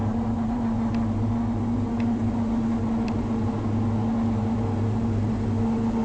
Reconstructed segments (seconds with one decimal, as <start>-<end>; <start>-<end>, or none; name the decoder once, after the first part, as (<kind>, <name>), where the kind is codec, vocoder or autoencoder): 0.0-0.6 (vocoder, BigVGAN v2)